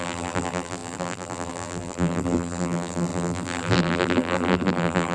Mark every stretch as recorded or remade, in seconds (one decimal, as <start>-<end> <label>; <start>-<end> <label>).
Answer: 0.0-5.1 remade